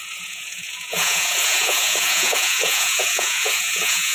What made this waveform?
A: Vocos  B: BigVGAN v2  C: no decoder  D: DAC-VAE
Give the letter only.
A